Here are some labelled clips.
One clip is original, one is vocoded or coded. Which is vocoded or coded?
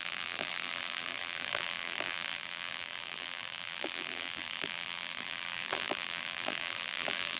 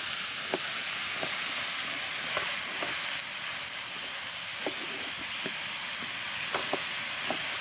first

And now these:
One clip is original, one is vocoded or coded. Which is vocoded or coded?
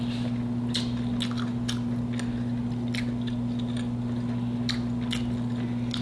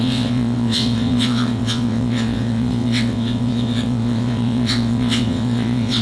second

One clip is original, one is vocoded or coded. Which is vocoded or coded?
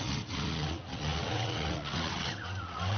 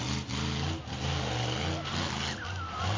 first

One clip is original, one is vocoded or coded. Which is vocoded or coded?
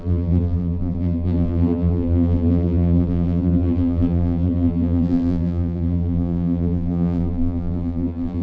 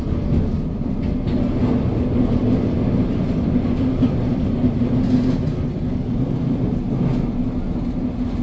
first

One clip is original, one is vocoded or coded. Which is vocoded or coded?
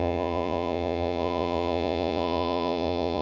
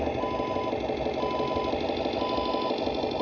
first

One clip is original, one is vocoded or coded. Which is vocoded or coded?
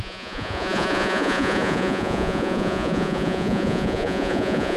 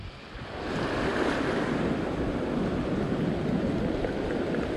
first